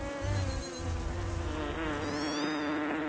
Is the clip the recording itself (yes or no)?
yes